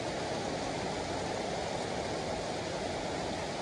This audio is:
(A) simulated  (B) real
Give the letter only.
B